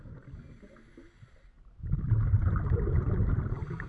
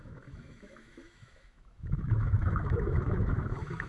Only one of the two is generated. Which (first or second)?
second